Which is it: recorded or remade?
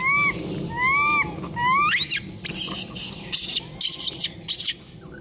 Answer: recorded